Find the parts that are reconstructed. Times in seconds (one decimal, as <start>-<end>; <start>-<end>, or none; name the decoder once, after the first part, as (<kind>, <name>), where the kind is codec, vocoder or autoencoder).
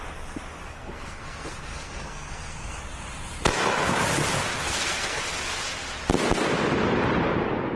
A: 0.7-2.8 (codec, SNAC); 4.6-5.2